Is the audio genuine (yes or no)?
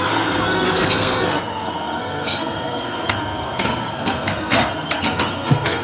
no